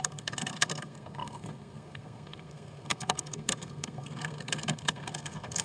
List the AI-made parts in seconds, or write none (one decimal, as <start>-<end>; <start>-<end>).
0.0-5.6